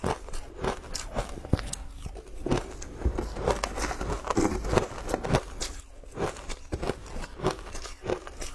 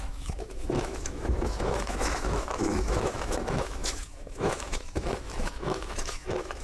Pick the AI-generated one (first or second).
second